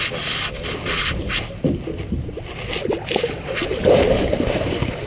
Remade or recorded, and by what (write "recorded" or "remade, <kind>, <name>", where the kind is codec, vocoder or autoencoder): recorded